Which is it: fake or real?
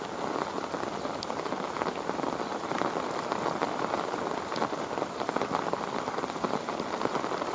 real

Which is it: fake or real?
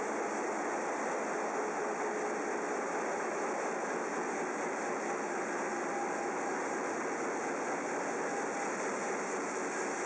real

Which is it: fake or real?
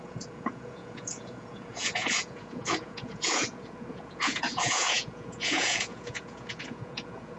fake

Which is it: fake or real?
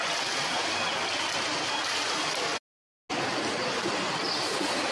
real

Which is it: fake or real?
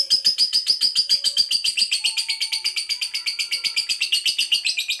real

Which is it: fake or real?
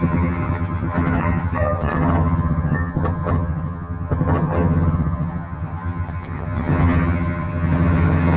fake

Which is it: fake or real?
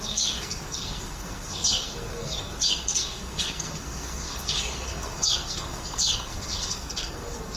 fake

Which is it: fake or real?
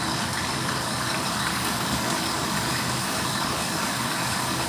fake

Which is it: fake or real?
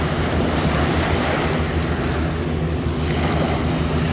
real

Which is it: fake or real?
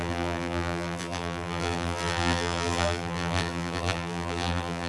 fake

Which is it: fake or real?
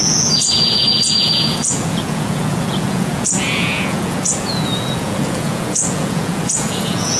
fake